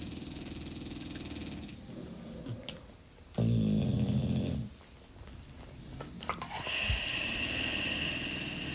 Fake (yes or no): no